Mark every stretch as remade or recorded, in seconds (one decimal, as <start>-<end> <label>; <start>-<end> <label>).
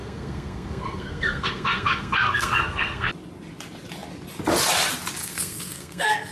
0.0-3.1 remade; 3.1-5.2 recorded; 5.2-6.3 remade